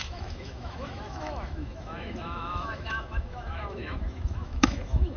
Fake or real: fake